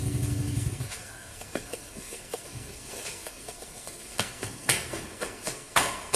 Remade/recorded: remade